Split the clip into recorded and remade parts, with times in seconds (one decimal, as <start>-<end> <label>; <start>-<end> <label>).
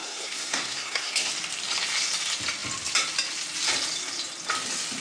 0.0-1.3 remade; 1.3-5.0 recorded